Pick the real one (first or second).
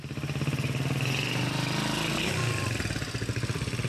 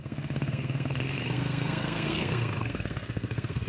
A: first